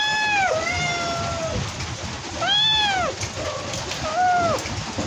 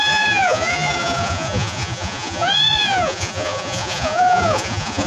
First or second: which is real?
first